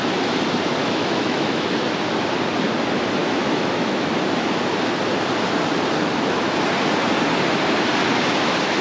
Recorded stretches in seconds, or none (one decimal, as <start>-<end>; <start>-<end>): 0.0-0.8; 1.7-3.2; 4.1-8.8